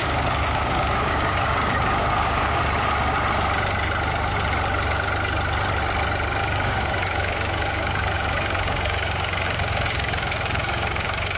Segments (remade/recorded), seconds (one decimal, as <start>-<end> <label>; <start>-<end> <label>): 0.0-2.6 remade; 2.6-6.4 recorded; 6.4-11.4 remade